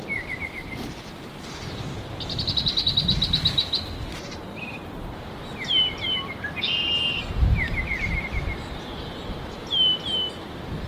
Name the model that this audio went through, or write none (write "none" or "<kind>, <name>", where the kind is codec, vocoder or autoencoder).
none